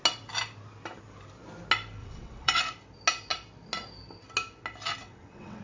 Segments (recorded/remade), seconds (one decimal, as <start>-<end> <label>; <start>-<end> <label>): 0.0-2.0 recorded; 2.0-2.6 remade; 2.6-5.0 recorded; 5.0-5.6 remade